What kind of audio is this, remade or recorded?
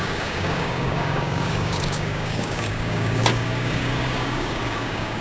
remade